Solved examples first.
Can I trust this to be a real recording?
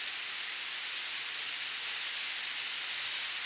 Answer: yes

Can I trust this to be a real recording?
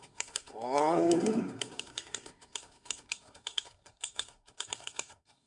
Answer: no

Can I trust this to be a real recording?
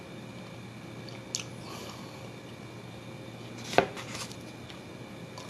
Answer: yes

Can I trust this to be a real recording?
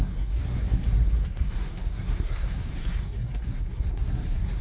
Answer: no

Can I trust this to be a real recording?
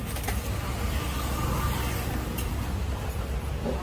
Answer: yes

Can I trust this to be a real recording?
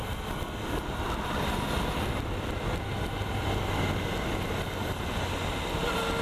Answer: yes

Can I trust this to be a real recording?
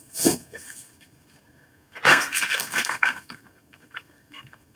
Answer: no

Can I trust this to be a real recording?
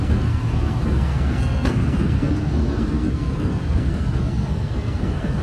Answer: no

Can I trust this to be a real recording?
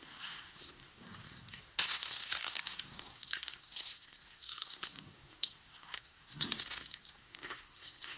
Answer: no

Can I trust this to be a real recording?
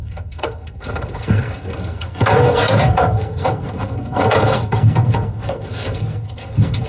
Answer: no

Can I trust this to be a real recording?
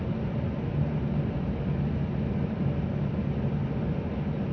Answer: yes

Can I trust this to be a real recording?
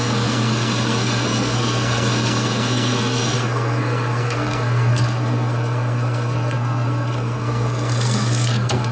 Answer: no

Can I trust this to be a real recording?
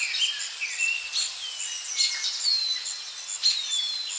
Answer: yes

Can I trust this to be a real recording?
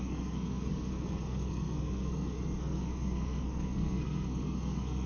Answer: no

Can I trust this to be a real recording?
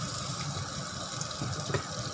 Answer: yes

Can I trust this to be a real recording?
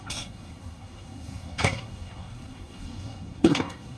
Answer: no